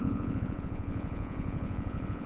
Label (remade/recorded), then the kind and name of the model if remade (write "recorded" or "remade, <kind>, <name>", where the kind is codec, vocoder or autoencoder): remade, vocoder, Vocos